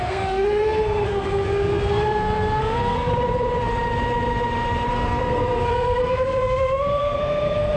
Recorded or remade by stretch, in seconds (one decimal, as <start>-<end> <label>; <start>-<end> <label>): 0.0-3.1 remade; 3.1-4.9 recorded; 4.9-7.8 remade